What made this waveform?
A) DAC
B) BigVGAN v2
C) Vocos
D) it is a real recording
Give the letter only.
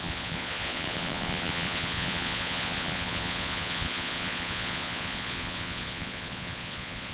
C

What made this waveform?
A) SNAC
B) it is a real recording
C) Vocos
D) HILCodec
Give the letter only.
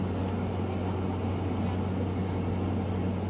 B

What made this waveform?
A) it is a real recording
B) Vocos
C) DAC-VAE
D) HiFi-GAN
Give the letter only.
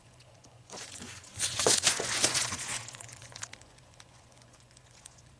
B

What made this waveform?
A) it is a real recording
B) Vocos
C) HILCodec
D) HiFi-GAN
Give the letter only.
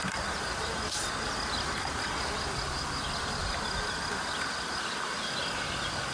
A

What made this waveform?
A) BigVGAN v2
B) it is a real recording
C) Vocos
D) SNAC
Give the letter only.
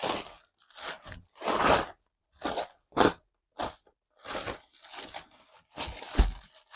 B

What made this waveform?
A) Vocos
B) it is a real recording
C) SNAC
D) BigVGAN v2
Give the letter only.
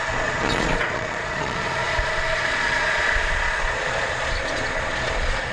A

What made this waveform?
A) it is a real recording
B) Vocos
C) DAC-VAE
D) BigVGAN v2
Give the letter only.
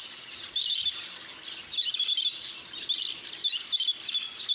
A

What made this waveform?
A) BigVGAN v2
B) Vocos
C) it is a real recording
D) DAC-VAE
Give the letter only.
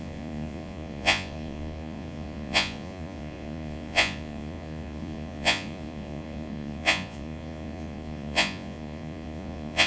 B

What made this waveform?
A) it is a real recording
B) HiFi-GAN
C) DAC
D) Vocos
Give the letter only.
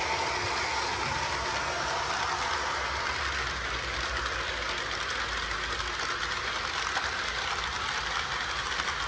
A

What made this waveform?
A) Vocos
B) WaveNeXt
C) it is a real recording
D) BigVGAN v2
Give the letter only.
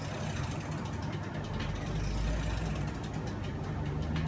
C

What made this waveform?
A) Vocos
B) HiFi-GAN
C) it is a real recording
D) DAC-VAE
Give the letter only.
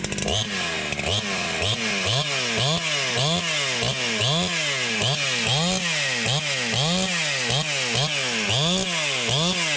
C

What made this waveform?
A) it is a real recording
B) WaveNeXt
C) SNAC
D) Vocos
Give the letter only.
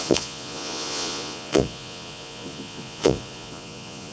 D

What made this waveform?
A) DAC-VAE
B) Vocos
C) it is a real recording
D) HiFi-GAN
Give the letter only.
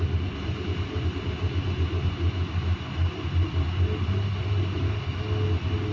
C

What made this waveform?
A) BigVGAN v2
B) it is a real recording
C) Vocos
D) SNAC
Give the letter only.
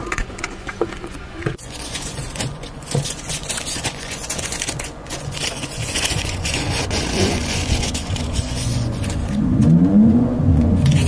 C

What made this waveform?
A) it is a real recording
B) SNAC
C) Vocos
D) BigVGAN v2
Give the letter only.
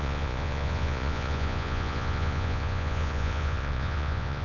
C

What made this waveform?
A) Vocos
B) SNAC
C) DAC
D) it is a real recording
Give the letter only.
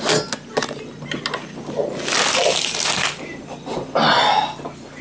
D